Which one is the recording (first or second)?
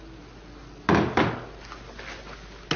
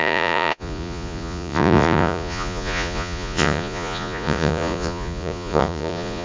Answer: first